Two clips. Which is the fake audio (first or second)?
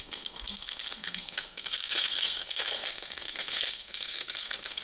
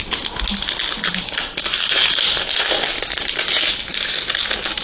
first